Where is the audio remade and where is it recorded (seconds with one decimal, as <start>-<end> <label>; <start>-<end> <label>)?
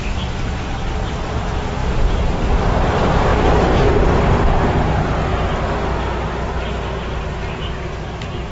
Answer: 0.0-8.5 recorded